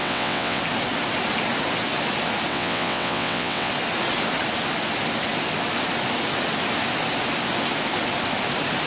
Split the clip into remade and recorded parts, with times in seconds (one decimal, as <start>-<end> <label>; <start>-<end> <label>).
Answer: 0.0-0.6 remade; 0.6-2.5 recorded; 2.5-3.7 remade; 3.7-8.9 recorded